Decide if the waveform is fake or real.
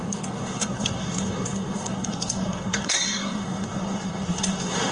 fake